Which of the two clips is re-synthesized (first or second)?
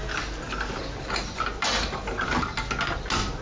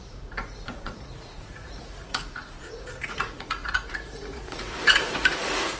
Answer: second